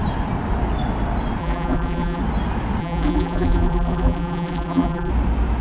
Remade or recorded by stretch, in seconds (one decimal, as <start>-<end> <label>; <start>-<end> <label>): 0.0-1.4 recorded; 1.4-2.2 remade; 2.2-2.8 recorded; 2.8-5.1 remade; 5.1-5.6 recorded